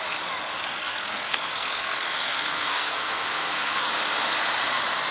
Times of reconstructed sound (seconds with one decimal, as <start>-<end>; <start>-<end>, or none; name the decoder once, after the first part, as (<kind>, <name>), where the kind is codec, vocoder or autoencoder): 0.8-3.9 (codec, SNAC)